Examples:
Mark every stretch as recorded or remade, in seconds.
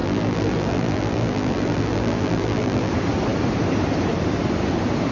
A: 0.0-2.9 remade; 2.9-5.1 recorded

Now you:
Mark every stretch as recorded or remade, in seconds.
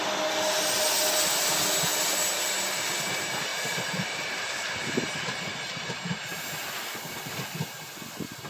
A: 0.0-3.5 recorded; 3.5-5.4 remade; 5.4-8.5 recorded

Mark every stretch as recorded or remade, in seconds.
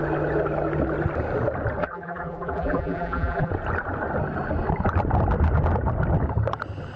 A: 0.0-1.8 recorded; 1.8-3.5 remade; 3.5-7.0 recorded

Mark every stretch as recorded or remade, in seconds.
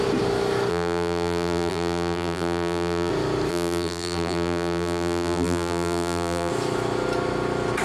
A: 0.0-0.7 recorded; 0.7-3.1 remade; 3.1-3.5 recorded; 3.5-6.5 remade; 6.5-7.8 recorded